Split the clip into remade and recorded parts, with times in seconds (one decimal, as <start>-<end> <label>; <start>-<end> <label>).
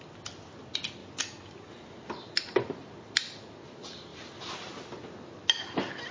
0.0-6.1 recorded